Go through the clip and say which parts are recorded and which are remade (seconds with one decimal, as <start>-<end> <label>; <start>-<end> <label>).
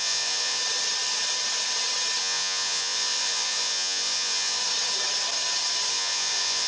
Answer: 0.0-0.6 remade; 0.6-2.2 recorded; 2.2-4.6 remade; 4.6-5.9 recorded; 5.9-6.7 remade